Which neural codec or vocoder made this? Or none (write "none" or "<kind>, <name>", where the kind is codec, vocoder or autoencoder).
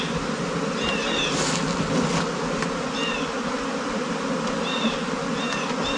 none